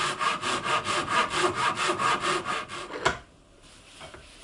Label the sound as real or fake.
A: real